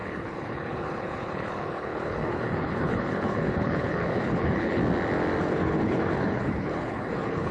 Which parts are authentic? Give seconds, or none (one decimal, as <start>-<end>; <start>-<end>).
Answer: 4.8-5.4